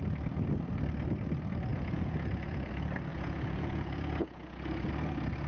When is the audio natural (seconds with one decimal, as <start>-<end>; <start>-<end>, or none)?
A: 0.0-1.7; 2.7-3.1; 4.9-5.5